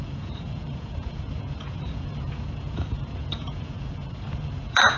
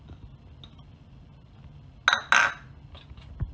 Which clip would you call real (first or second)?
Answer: second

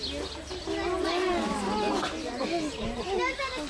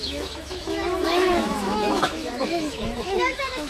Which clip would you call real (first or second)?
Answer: first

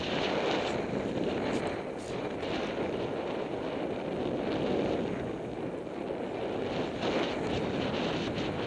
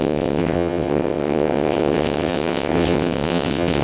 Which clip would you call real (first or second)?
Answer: first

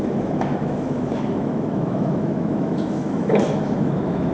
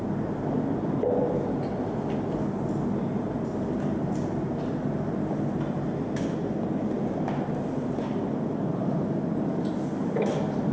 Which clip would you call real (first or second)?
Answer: second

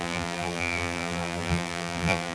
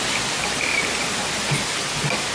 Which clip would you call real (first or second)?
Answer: second